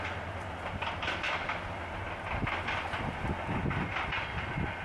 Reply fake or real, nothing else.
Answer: real